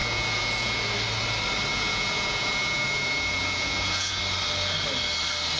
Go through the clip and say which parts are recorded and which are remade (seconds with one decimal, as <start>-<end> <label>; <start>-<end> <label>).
0.0-0.8 remade; 0.8-1.7 recorded; 1.7-4.2 remade; 4.2-5.6 recorded